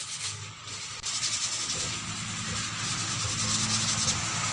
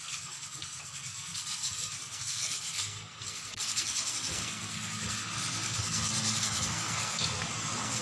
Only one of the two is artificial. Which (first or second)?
second